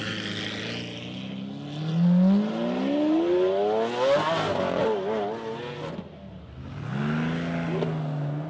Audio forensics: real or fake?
real